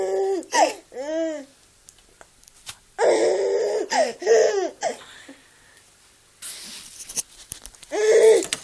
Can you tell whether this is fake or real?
real